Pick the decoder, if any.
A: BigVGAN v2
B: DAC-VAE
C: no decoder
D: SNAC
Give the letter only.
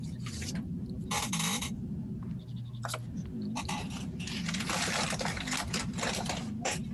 C